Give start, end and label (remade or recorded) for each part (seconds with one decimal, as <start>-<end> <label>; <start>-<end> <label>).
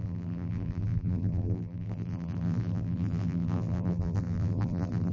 0.0-5.1 remade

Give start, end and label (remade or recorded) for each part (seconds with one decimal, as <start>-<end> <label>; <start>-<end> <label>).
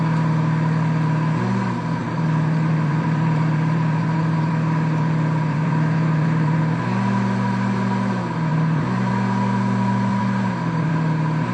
0.0-2.0 recorded; 2.0-6.6 remade; 6.6-8.5 recorded; 8.5-9.1 remade; 9.1-10.1 recorded; 10.1-10.9 remade; 10.9-11.5 recorded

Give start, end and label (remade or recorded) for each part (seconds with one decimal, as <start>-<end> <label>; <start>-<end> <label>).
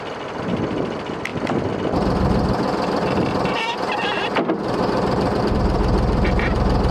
0.0-1.3 remade; 1.3-5.4 recorded; 5.4-6.9 remade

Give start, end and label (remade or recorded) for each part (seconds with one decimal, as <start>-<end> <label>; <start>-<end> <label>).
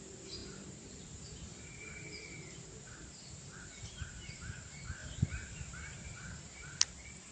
0.0-7.3 remade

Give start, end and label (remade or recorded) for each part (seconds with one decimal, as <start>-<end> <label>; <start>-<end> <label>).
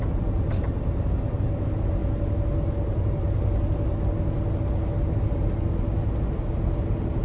0.0-7.2 recorded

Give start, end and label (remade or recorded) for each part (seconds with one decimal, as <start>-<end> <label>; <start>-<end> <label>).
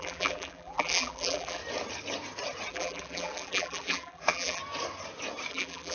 0.0-1.6 remade; 1.6-2.7 recorded; 2.7-4.6 remade; 4.6-5.5 recorded; 5.5-5.9 remade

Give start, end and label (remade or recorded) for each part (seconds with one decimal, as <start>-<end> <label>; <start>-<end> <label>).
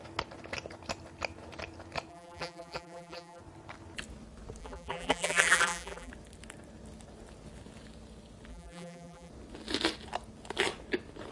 0.0-2.1 recorded; 2.1-3.4 remade; 3.4-4.6 recorded; 4.6-6.1 remade; 6.1-8.5 recorded; 8.5-9.3 remade; 9.3-11.3 recorded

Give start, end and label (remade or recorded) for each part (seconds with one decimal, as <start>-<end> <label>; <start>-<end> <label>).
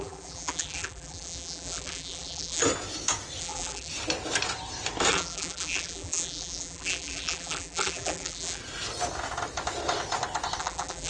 0.0-2.6 remade; 2.6-3.4 recorded; 3.4-3.9 remade; 3.9-5.1 recorded; 5.1-8.6 remade; 8.6-10.6 recorded; 10.6-11.1 remade